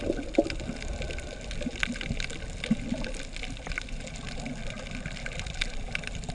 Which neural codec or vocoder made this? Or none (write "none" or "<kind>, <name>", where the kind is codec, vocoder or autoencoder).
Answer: none